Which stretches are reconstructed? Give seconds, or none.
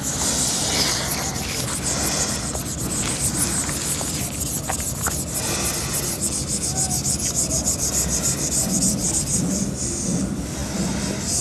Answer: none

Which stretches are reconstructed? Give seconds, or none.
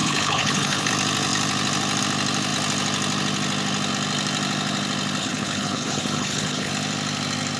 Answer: 0.0-0.9 (codec, HILCodec); 5.2-6.7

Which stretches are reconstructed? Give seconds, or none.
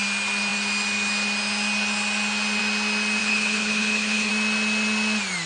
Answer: 3.2-4.3 (codec, HILCodec)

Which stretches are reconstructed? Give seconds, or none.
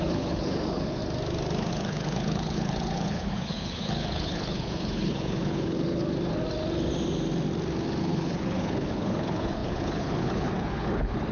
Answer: 0.0-1.0 (codec, HILCodec); 1.7-6.0; 8.0-11.3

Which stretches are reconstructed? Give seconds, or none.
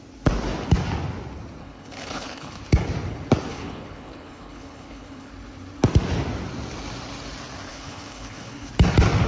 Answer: 1.6-2.6 (codec, HILCodec); 3.5-5.3; 7.7-8.7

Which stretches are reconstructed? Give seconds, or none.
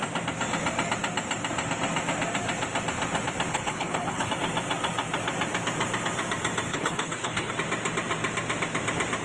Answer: 3.5-4.3 (codec, HILCodec); 6.7-7.5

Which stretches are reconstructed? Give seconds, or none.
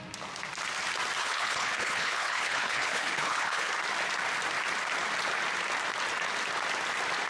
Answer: 1.2-3.7 (codec, HILCodec)